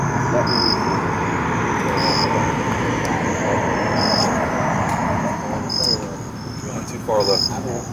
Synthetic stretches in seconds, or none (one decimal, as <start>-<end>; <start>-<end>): none